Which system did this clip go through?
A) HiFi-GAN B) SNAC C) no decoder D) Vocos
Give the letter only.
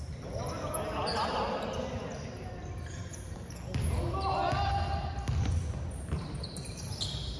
C